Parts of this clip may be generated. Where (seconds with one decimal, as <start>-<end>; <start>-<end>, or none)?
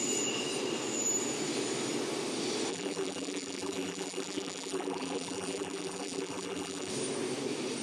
2.7-6.9